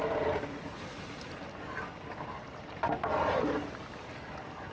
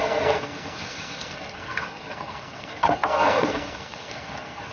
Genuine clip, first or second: first